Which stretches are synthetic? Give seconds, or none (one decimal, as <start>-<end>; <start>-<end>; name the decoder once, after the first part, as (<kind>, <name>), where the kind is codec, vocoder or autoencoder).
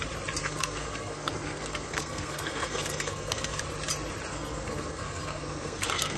0.4-3.6 (codec, SNAC); 4.3-6.2